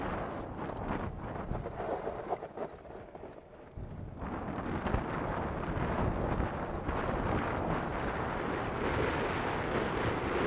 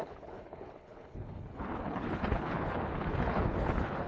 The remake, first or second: second